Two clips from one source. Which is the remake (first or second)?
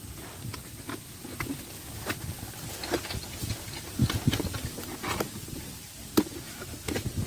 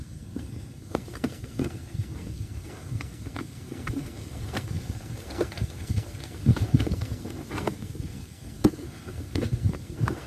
second